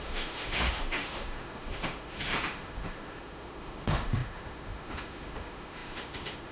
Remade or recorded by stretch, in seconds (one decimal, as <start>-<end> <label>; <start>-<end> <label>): 0.0-6.5 remade